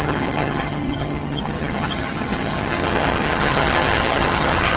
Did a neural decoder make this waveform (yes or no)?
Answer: yes